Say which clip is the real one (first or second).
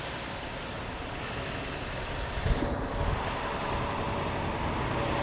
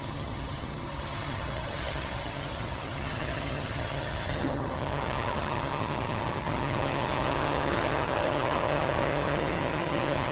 first